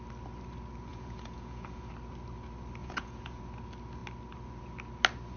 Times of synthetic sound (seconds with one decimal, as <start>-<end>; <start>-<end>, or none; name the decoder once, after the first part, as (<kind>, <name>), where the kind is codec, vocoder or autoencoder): 0.9-1.9 (vocoder, Vocos); 2.8-3.4